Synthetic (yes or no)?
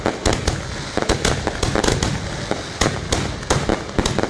no